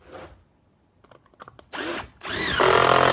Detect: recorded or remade recorded